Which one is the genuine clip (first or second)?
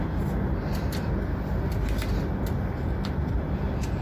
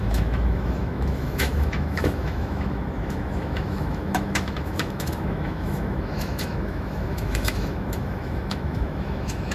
first